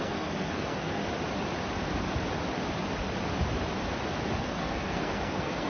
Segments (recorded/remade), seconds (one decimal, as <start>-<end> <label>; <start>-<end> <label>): 0.0-1.0 remade; 1.0-4.4 recorded; 4.4-5.7 remade